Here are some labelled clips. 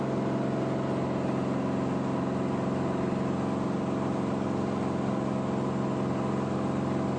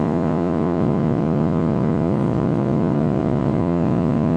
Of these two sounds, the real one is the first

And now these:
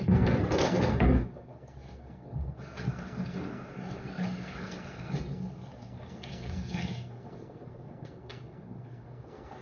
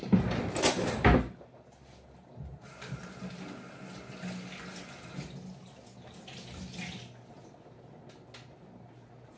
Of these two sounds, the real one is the second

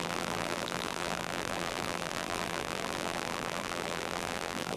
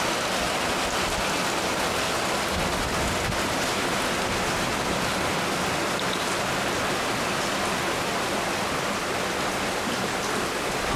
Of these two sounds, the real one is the second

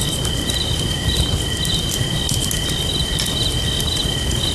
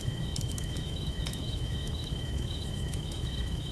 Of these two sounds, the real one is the first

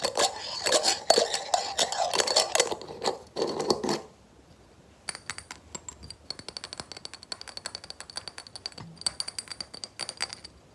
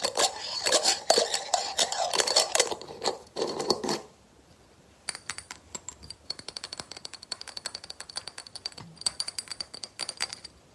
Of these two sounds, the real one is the first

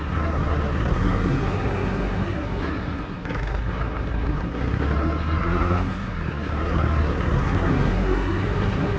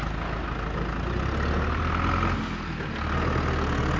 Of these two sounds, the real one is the second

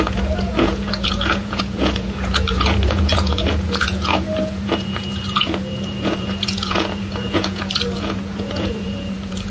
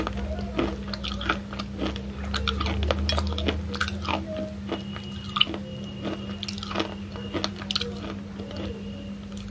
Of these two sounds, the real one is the second